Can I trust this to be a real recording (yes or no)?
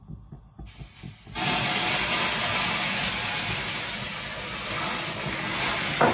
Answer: yes